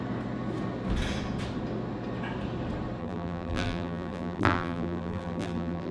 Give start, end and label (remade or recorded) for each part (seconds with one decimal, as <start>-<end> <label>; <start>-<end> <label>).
0.0-3.0 recorded; 3.0-5.9 remade